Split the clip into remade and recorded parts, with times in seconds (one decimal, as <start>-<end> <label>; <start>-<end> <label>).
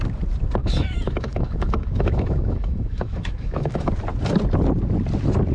0.0-0.6 recorded; 0.6-3.9 remade; 3.9-5.5 recorded